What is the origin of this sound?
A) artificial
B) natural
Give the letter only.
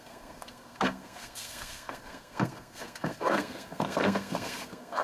A